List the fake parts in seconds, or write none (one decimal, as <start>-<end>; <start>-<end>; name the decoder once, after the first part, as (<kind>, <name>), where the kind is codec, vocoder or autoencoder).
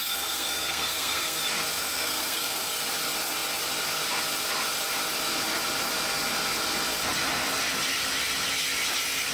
0.0-1.4 (codec, SNAC); 1.8-2.7